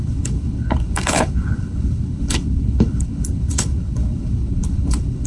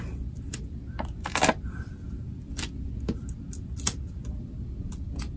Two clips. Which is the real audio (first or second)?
second